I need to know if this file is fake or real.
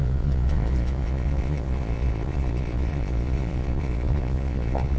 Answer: fake